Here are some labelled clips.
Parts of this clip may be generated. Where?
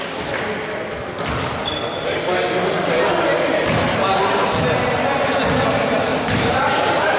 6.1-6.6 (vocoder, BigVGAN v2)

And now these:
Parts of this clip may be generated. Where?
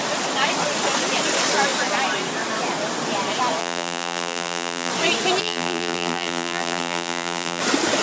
3.6-4.9 (vocoder, BigVGAN v2); 5.4-7.6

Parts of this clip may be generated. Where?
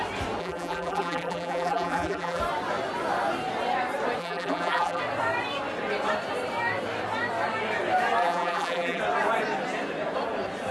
0.4-2.4 (vocoder, BigVGAN v2); 4.2-5.0; 8.2-9.0